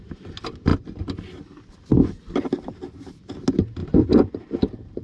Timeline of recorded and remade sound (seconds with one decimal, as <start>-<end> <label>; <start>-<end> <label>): 0.0-5.0 recorded